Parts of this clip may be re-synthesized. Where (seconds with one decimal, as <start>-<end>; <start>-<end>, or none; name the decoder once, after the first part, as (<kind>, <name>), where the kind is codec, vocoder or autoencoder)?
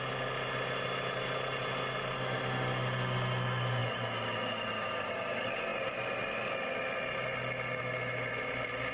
none